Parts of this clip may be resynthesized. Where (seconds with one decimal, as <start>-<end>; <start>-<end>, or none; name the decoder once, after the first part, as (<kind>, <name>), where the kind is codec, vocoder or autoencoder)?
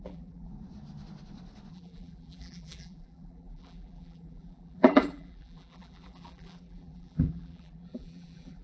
0.0-0.5 (vocoder, BigVGAN v2); 1.7-8.6